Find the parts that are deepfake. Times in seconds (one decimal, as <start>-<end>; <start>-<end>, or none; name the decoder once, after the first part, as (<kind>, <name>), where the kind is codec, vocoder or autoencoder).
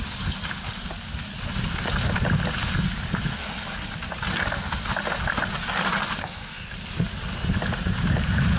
6.2-6.7 (codec, SNAC)